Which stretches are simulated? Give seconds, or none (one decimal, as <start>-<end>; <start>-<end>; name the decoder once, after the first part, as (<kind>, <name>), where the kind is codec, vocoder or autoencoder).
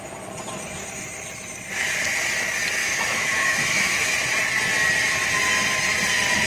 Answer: 2.8-4.1 (autoencoder, DAC-VAE)